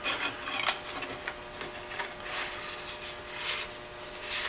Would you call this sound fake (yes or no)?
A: no